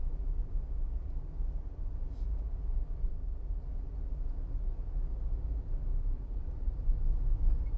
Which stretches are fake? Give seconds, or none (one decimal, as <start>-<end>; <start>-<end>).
3.1-3.6; 5.9-6.4